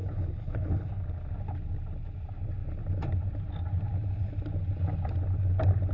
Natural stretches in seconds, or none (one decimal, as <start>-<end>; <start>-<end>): 0.9-5.9